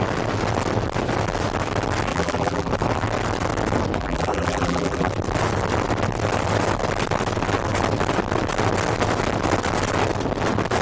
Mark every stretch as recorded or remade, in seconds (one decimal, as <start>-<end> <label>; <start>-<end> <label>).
0.0-2.1 recorded; 2.1-2.7 remade; 2.7-4.0 recorded; 4.0-5.1 remade; 5.1-10.8 recorded